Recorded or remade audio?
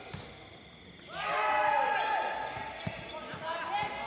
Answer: recorded